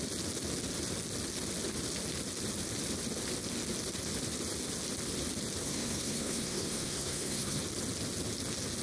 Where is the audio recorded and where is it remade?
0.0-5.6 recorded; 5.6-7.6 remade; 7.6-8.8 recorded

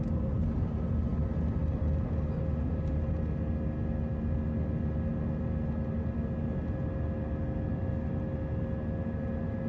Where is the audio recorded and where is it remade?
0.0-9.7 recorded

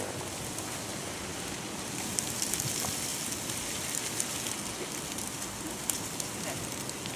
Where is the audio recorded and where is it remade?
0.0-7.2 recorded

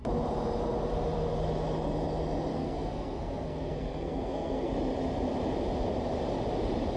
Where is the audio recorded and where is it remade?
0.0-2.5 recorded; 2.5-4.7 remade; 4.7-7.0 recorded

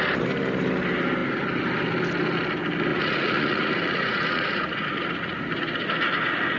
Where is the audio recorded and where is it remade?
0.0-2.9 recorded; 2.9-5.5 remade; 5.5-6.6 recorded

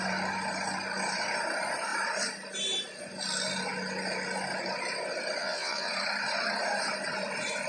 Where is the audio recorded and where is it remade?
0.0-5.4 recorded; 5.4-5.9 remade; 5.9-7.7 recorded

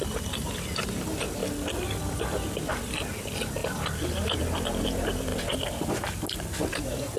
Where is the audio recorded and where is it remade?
0.0-1.4 remade; 1.4-2.0 recorded; 2.0-5.3 remade; 5.3-6.7 recorded; 6.7-7.2 remade

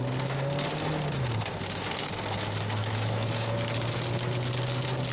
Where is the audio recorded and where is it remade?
0.0-2.8 recorded; 2.8-4.0 remade; 4.0-5.1 recorded